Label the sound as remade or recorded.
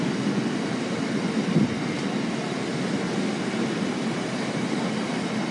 recorded